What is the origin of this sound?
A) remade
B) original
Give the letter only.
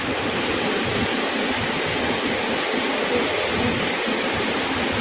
B